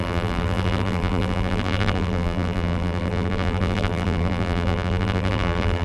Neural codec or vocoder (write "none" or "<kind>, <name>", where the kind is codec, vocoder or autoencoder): vocoder, BigVGAN v2